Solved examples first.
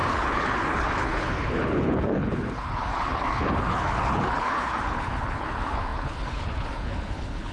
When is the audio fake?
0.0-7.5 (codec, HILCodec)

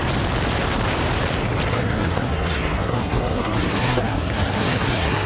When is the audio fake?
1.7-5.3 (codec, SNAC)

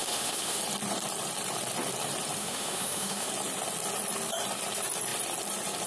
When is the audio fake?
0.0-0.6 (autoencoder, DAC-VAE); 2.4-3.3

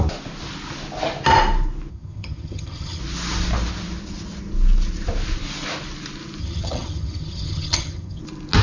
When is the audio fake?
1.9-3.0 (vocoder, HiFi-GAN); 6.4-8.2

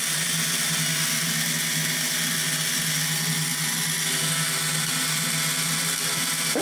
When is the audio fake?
none

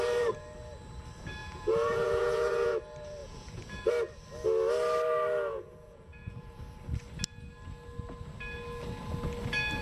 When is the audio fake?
1.4-2.8 (vocoder, Vocos); 3.2-3.9; 5.5-6.6

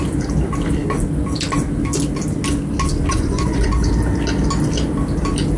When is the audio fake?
3.1-3.9 (vocoder, Vocos)